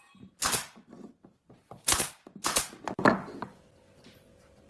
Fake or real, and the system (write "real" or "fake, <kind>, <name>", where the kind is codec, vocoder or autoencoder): real